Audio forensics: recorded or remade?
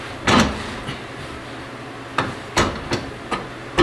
recorded